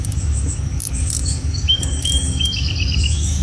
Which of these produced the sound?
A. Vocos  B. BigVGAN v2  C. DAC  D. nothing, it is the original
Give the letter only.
C